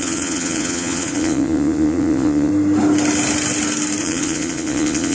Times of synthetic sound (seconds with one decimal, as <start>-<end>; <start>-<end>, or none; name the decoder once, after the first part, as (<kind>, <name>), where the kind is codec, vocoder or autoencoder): 0.0-2.5 (vocoder, Vocos); 4.0-5.1